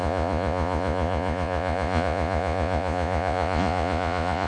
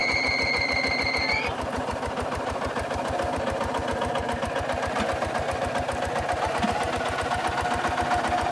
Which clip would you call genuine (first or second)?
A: second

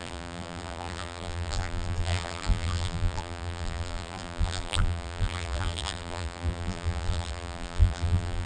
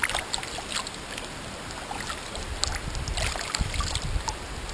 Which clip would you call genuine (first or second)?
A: second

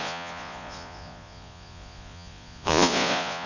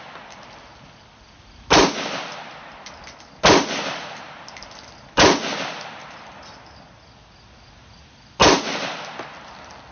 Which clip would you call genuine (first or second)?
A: second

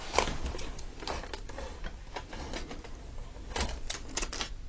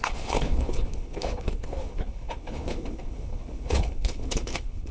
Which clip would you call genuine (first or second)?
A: first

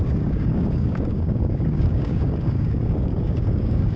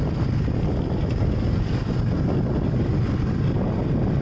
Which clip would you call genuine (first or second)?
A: second